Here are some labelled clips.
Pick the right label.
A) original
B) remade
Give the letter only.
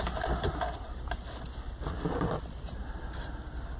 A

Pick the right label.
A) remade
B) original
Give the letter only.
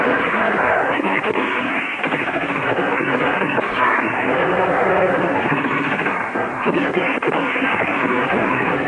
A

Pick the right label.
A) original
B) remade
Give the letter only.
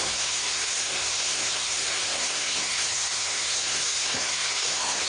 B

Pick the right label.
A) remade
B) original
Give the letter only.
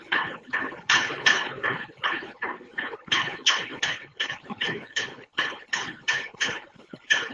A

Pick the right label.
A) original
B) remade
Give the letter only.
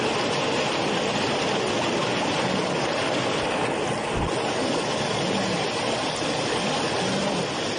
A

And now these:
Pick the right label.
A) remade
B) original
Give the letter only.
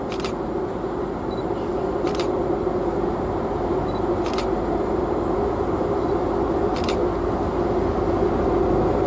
B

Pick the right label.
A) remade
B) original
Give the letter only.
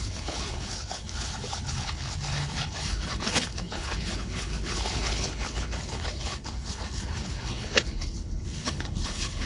A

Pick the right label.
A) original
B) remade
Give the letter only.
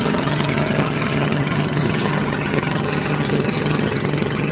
B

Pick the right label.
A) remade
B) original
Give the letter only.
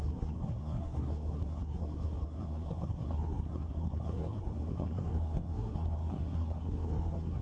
A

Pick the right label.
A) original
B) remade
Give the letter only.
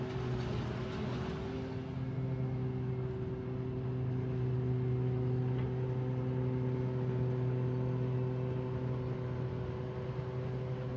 A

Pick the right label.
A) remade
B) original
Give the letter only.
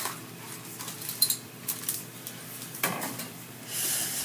A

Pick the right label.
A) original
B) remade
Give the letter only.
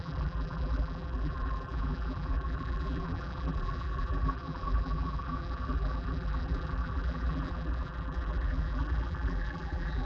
B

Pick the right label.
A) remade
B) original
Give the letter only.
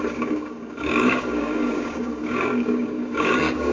A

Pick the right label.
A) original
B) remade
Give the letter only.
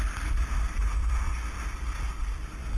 A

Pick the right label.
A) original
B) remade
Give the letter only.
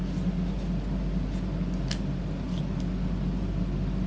A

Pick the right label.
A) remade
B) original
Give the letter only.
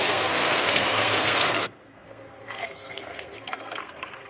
A